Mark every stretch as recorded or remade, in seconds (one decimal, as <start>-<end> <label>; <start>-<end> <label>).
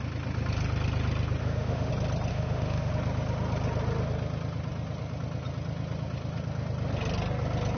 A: 0.0-1.4 recorded; 1.4-1.9 remade; 1.9-2.3 recorded; 2.3-2.9 remade; 2.9-7.8 recorded